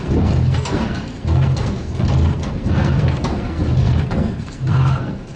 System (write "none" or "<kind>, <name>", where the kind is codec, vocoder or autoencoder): codec, SNAC